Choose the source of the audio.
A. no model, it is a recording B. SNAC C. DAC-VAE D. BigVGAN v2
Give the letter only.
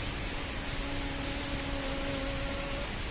A